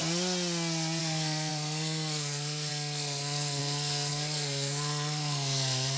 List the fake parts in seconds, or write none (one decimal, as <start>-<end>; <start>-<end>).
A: 1.0-6.0